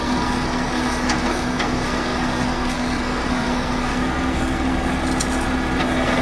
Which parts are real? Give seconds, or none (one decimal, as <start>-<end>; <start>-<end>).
4.9-5.8